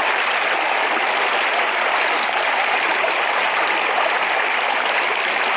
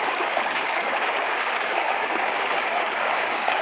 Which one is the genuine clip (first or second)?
first